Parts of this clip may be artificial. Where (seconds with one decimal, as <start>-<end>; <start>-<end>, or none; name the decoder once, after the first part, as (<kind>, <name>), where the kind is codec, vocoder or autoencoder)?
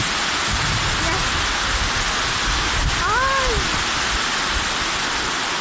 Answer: none